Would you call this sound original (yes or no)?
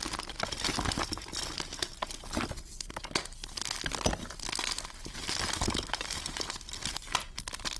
yes